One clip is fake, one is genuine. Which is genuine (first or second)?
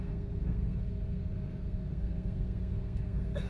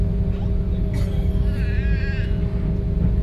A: second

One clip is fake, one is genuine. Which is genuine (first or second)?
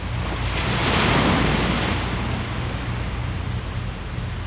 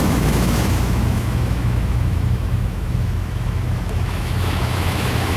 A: first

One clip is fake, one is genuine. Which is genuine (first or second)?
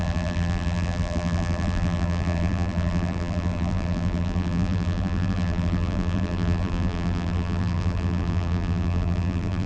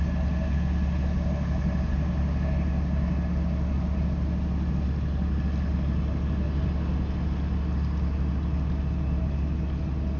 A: second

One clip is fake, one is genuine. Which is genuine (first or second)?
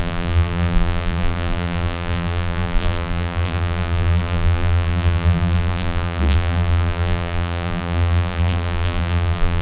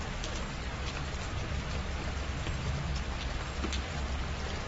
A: second